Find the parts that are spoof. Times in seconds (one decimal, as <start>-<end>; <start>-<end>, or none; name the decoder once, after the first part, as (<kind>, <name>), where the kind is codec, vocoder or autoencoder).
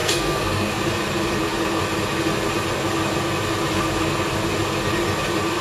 0.0-0.7 (codec, SNAC)